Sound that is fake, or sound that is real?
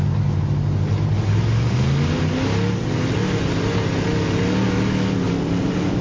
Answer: real